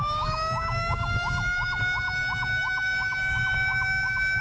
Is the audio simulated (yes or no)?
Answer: yes